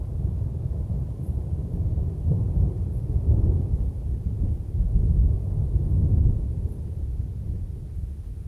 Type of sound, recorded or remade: recorded